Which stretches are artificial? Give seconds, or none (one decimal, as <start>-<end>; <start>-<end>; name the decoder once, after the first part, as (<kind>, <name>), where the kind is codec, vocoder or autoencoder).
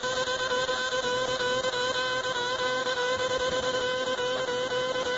2.8-3.8 (autoencoder, DAC-VAE)